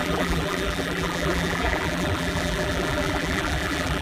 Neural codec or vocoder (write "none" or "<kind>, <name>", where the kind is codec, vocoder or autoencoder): vocoder, BigVGAN v2